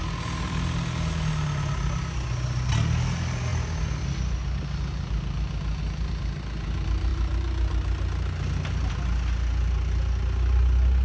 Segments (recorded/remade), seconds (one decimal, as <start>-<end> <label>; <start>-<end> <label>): 0.0-11.0 recorded